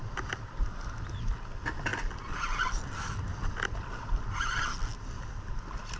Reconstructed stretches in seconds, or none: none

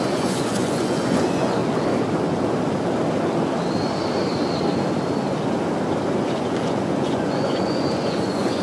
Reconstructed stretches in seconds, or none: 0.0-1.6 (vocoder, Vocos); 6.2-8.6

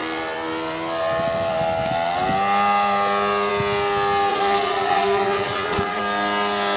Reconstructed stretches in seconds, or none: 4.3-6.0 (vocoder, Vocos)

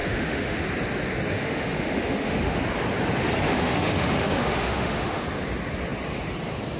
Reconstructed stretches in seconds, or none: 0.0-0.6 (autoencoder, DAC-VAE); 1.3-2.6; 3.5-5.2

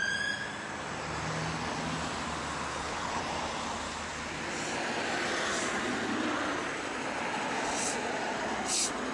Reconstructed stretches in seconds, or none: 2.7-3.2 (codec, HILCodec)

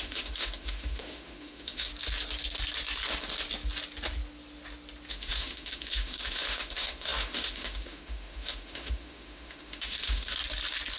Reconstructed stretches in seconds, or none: 0.0-1.9 (autoencoder, DAC-VAE); 5.1-10.4

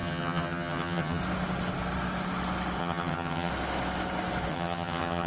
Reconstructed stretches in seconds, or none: 0.0-1.2 (vocoder, HiFi-GAN); 2.8-3.5; 4.5-5.3